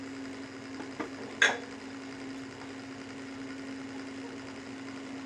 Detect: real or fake real